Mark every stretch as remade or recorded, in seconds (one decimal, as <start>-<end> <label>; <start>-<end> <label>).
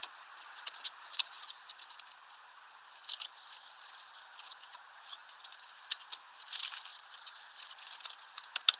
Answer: 0.0-1.5 remade; 1.5-4.5 recorded; 4.5-5.2 remade; 5.2-6.9 recorded; 6.9-7.4 remade; 7.4-8.8 recorded